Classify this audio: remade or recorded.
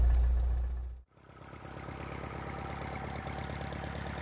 recorded